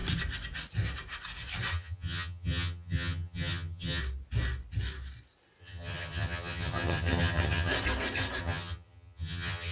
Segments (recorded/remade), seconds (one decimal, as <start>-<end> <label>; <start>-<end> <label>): 0.0-1.7 recorded; 1.7-4.0 remade; 4.0-5.6 recorded; 5.6-7.7 remade; 7.7-8.4 recorded; 8.4-9.7 remade